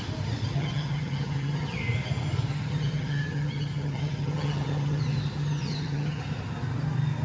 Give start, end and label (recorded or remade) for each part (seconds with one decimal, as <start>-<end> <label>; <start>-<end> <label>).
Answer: 0.0-0.5 recorded; 0.5-1.8 remade; 1.8-2.5 recorded; 2.5-5.0 remade; 5.0-5.4 recorded; 5.4-6.2 remade; 6.2-7.2 recorded